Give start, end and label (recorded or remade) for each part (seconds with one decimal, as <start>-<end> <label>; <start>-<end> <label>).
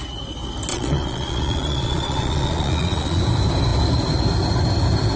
0.0-0.7 recorded; 0.7-3.2 remade; 3.2-5.2 recorded